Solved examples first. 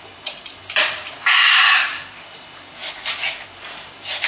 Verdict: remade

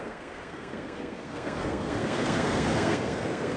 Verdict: remade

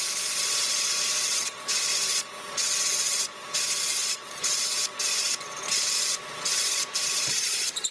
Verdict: remade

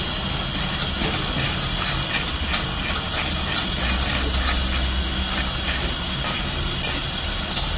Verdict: recorded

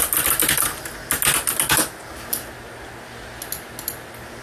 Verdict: recorded